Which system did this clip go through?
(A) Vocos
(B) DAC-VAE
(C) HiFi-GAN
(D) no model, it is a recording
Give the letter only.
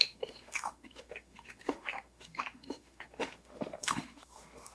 B